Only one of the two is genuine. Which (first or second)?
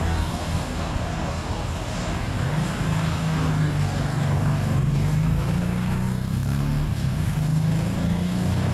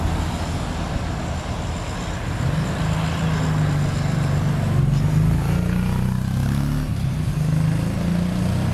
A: second